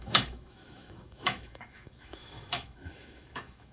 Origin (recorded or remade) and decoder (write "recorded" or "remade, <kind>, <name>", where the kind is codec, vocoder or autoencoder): remade, autoencoder, DAC-VAE